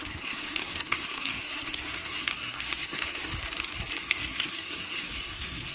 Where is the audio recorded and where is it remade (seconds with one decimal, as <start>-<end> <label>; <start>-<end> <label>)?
0.0-3.3 remade; 3.3-3.9 recorded; 3.9-5.7 remade